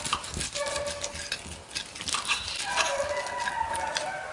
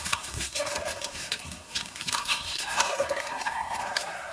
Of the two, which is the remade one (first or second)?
second